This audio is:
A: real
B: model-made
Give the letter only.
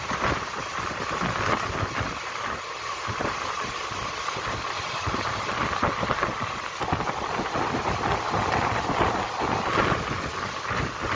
A